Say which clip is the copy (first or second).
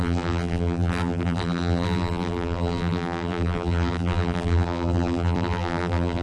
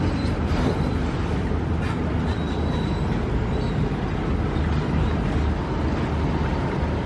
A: first